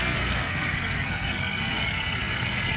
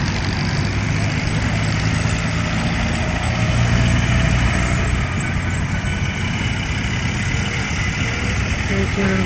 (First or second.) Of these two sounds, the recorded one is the second